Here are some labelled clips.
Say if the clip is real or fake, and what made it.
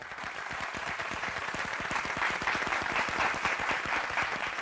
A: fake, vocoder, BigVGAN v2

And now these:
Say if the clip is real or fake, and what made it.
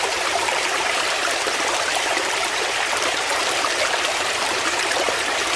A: fake, vocoder, BigVGAN v2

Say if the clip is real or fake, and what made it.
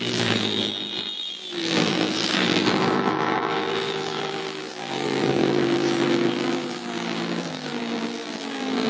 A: fake, vocoder, BigVGAN v2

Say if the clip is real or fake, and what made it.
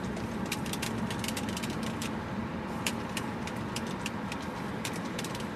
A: fake, vocoder, BigVGAN v2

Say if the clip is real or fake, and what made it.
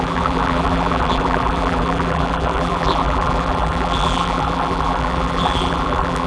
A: fake, vocoder, BigVGAN v2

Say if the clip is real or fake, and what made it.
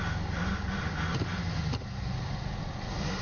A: real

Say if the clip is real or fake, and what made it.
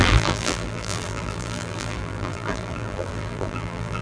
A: fake, vocoder, BigVGAN v2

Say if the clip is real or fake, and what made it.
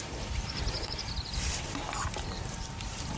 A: fake, vocoder, BigVGAN v2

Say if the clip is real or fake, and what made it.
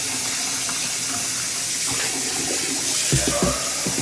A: real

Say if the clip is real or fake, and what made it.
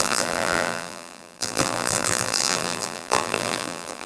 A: fake, vocoder, BigVGAN v2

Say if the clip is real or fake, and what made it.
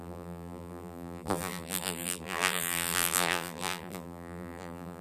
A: fake, vocoder, BigVGAN v2